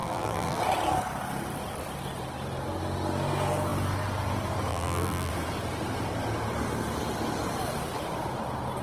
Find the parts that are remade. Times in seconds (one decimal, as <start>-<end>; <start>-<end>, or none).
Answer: 0.0-0.6; 4.7-5.3